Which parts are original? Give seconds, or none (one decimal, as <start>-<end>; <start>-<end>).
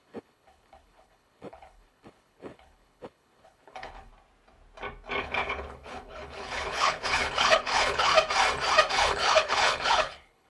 4.1-5.2; 8.1-8.9